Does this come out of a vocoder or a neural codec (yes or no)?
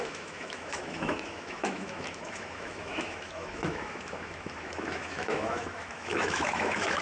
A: yes